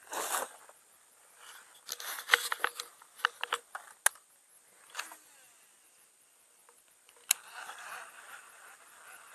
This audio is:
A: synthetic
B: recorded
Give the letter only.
B